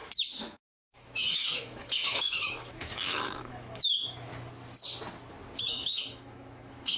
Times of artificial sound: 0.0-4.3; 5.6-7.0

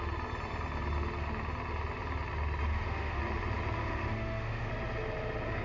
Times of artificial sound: 2.7-3.2; 3.8-4.7

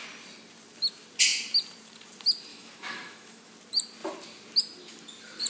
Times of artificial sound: 2.5-3.5

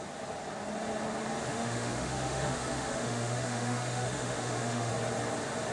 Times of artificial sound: 1.5-4.9

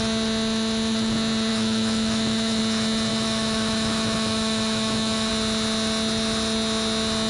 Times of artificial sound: 1.5-2.6; 3.1-5.3